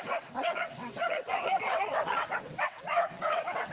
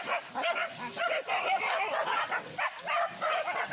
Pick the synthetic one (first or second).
first